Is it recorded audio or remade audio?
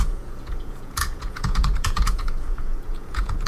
remade